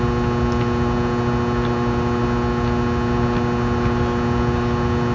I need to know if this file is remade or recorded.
recorded